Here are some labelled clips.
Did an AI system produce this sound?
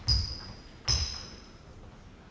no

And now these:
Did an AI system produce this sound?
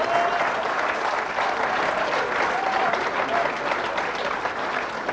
no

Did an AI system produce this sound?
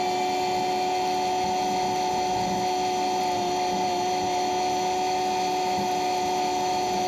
no